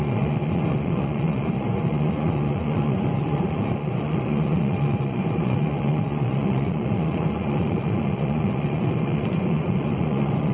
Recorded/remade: remade